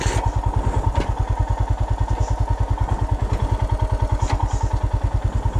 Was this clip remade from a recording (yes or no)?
no